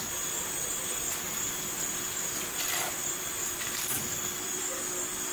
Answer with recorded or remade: remade